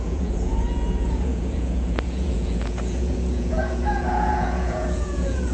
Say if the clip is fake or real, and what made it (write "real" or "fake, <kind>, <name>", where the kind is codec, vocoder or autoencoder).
fake, vocoder, Vocos